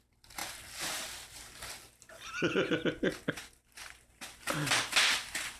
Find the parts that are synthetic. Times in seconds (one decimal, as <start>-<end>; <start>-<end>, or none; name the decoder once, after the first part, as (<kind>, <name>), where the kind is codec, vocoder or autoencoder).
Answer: none

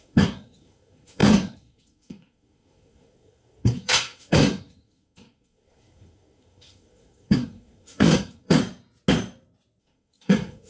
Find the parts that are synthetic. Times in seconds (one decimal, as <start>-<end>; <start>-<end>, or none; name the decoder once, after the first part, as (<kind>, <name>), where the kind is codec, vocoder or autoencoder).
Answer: 0.0-8.6 (codec, SNAC); 9.8-10.7

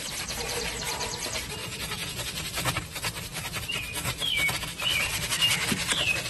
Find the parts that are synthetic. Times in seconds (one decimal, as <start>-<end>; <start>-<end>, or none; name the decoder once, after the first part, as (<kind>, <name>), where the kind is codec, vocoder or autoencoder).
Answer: 1.6-2.2 (vocoder, Vocos)

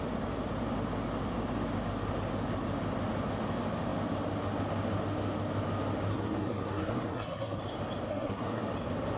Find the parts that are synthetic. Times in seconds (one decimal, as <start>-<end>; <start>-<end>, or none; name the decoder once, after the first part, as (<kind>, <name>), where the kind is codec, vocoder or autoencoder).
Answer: 6.1-7.6 (codec, SNAC); 8.1-8.7

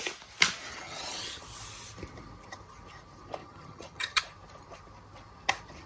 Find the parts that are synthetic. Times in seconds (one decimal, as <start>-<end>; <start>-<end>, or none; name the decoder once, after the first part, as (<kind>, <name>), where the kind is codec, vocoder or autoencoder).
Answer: 0.7-1.4 (vocoder, HiFi-GAN); 3.4-4.2